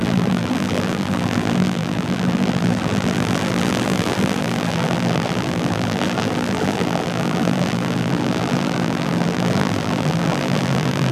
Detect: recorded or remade remade